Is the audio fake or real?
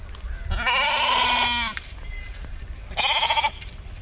real